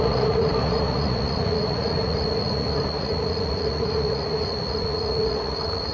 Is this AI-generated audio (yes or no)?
yes